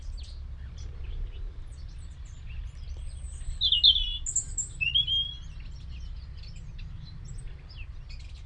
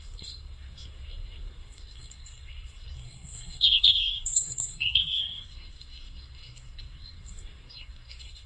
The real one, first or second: first